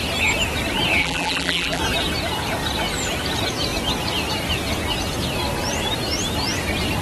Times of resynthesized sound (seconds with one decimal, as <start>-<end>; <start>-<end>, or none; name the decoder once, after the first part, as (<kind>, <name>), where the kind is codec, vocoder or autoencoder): 1.0-1.8 (vocoder, BigVGAN v2)